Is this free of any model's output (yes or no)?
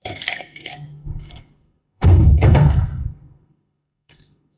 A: no